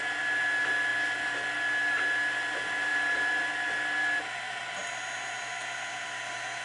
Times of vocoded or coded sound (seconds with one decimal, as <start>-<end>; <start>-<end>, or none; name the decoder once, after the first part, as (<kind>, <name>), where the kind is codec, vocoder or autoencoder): none